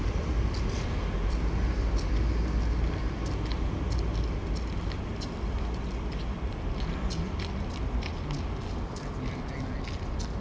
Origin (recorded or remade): recorded